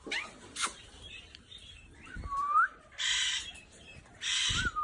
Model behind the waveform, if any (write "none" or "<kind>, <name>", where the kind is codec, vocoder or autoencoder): vocoder, BigVGAN v2